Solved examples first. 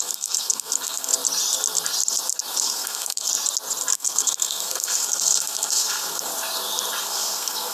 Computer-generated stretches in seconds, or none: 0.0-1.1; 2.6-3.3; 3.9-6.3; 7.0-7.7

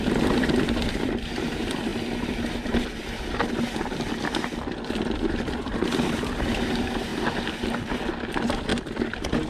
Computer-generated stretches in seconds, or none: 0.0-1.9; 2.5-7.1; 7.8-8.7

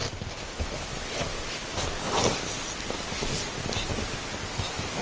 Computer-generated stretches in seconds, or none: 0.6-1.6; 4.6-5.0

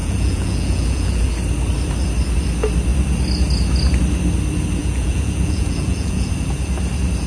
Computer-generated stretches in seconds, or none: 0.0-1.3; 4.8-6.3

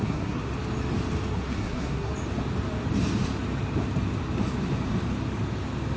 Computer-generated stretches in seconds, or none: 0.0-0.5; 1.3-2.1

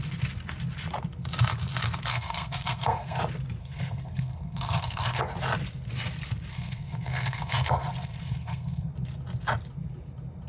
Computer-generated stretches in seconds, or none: 2.1-3.2; 3.6-5.2; 6.5-8.9